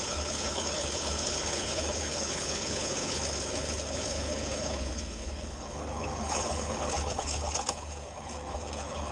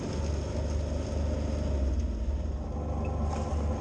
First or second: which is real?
second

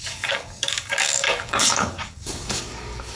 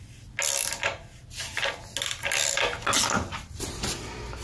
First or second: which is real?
second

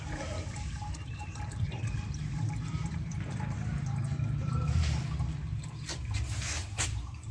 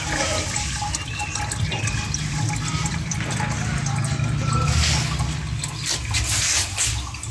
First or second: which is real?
second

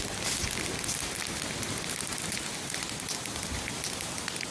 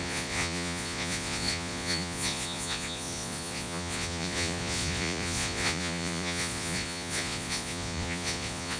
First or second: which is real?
first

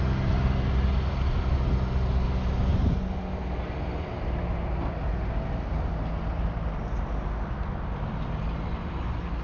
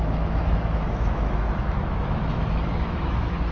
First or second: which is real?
first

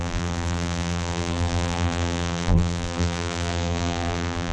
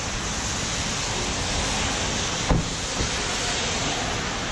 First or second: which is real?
second